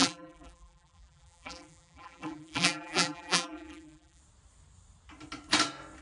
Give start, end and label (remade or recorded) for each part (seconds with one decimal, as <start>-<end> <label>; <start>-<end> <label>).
0.0-4.2 remade; 4.2-6.0 recorded